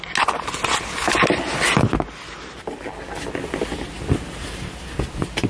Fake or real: real